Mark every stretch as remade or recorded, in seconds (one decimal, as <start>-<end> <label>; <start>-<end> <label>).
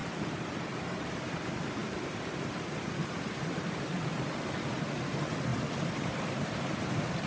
0.0-5.5 remade; 5.5-6.1 recorded; 6.1-7.3 remade